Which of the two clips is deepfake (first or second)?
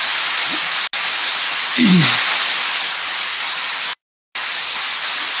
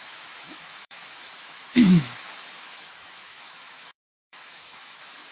second